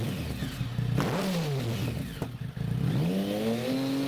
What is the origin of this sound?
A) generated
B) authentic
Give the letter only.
B